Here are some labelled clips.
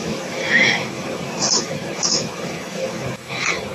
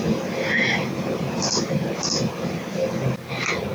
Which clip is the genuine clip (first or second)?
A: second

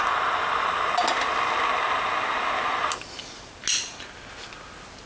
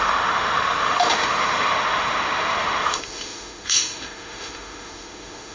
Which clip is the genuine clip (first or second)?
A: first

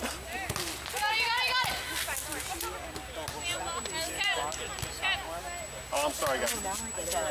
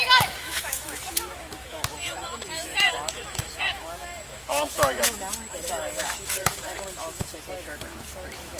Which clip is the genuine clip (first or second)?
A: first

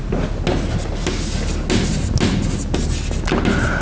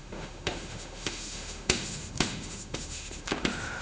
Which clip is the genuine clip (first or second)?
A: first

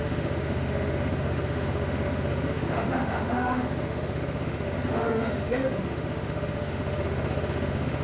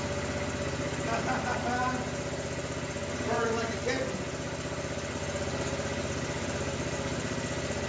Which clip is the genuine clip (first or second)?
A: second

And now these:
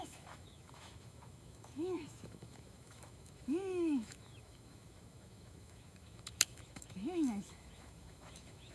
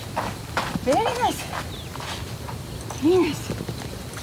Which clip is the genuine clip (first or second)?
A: second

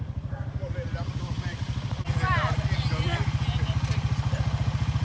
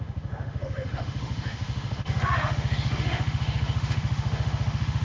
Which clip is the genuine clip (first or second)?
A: first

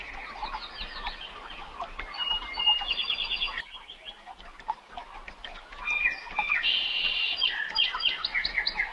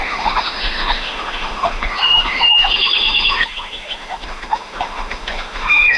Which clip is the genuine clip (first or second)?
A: first